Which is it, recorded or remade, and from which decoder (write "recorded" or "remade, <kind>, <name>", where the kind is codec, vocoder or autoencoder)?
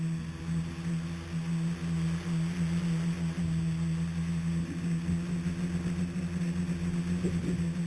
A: recorded